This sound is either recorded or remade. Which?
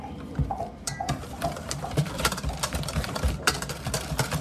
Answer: remade